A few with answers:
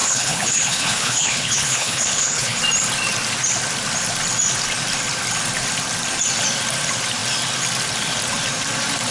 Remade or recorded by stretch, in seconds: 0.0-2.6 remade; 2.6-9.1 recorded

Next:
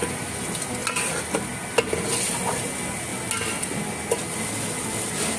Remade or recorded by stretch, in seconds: 0.0-5.4 recorded

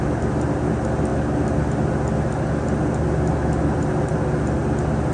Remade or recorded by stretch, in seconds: 0.0-5.1 recorded

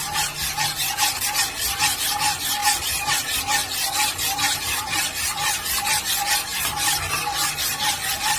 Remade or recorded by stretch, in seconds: 0.0-2.6 recorded; 2.6-3.4 remade; 3.4-6.5 recorded; 6.5-7.2 remade; 7.2-8.4 recorded

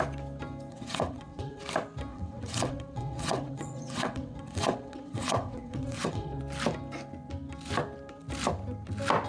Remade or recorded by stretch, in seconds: 0.0-0.7 recorded; 0.7-1.6 remade; 1.6-2.1 recorded; 2.1-6.4 remade; 6.4-9.3 recorded